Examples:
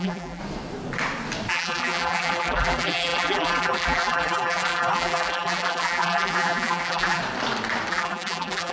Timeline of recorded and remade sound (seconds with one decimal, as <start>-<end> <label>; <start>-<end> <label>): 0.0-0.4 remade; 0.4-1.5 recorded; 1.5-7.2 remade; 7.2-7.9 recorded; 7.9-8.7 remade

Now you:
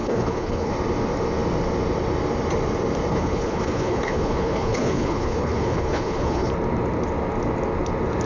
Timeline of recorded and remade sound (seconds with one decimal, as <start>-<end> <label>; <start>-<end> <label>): 0.0-0.7 remade; 0.7-3.1 recorded; 3.1-6.5 remade; 6.5-8.3 recorded

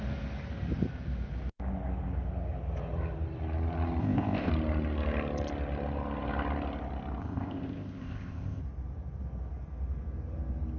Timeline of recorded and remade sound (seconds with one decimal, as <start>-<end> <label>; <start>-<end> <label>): 0.0-4.0 recorded; 4.0-4.5 remade; 4.5-7.2 recorded; 7.2-8.6 remade; 8.6-10.8 recorded

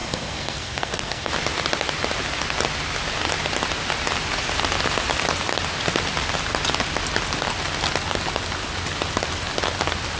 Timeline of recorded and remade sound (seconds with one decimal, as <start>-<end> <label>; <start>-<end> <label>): 0.0-1.3 remade; 1.3-10.2 recorded